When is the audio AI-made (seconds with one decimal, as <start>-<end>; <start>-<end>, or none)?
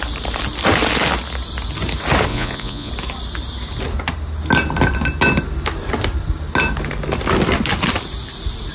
2.3-2.9